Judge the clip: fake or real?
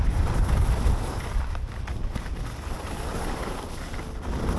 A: real